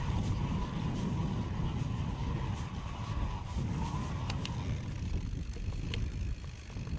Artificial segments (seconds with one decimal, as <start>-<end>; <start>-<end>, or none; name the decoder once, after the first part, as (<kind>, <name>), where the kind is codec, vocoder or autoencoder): none